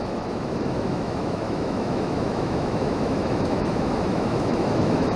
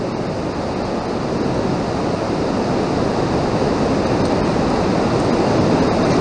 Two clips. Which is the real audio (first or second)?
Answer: second